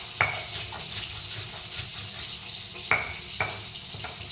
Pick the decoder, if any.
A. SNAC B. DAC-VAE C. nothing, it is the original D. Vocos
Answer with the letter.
C